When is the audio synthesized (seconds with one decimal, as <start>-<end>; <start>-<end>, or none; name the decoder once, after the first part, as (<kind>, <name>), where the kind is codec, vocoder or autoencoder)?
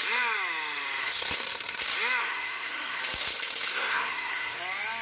1.0-1.8 (codec, SNAC); 2.2-3.0; 3.7-4.6